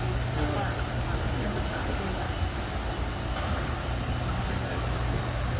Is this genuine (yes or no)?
yes